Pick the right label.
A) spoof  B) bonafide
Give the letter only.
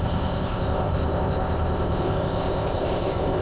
A